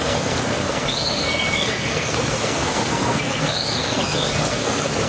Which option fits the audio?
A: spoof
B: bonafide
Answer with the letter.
A